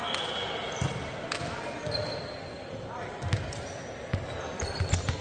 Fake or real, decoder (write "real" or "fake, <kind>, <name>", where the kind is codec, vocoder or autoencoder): real